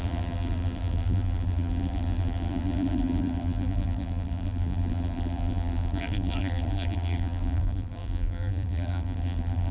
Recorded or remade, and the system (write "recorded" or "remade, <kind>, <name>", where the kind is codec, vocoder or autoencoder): remade, vocoder, BigVGAN v2